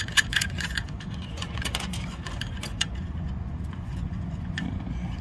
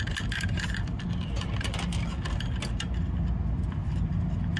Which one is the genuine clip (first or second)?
second